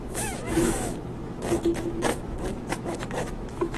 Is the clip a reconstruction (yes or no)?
yes